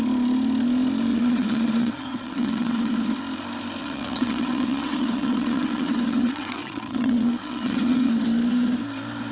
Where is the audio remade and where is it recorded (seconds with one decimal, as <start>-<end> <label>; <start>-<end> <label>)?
0.0-1.1 recorded; 1.1-2.9 remade; 2.9-3.8 recorded; 3.8-8.1 remade; 8.1-9.3 recorded